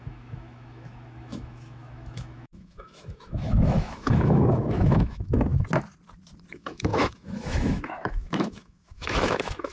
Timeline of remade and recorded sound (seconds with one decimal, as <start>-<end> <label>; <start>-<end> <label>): 0.0-5.5 remade; 5.5-6.5 recorded; 6.5-9.7 remade